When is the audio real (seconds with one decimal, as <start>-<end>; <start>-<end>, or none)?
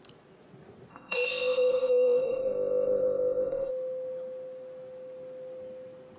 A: 0.0-0.9; 3.7-6.2